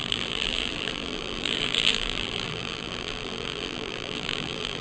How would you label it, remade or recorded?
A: remade